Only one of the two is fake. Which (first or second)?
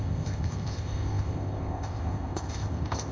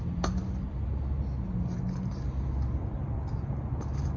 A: first